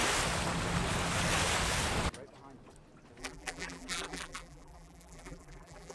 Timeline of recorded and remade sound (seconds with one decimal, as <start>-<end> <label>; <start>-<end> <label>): 0.0-3.2 recorded; 3.2-5.9 remade